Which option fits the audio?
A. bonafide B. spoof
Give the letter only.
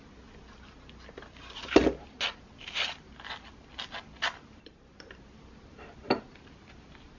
A